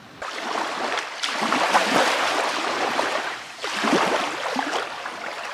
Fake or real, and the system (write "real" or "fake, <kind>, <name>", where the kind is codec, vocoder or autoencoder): fake, vocoder, BigVGAN v2